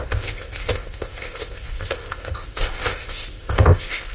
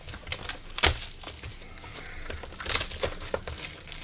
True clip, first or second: second